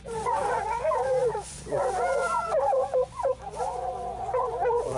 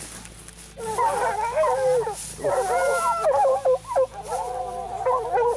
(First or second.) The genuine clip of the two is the second